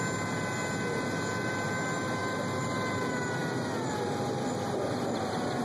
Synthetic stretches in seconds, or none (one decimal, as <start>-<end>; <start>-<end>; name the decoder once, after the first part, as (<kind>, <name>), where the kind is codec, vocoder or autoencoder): none